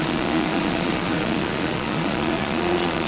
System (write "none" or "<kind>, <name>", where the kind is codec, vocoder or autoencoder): vocoder, Vocos